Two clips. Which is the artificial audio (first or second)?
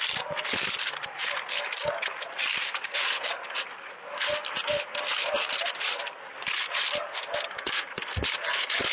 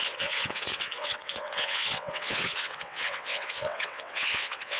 second